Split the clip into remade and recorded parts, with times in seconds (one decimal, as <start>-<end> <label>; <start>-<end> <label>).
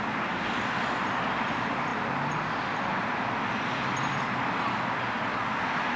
0.0-6.0 recorded